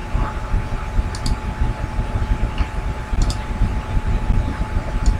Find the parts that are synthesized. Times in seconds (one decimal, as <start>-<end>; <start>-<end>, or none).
2.5-3.7; 4.4-5.2